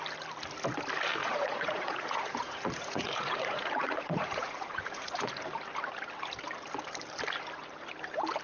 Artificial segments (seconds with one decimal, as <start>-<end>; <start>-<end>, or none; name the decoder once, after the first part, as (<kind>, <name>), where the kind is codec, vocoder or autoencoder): 1.2-5.3 (vocoder, Vocos)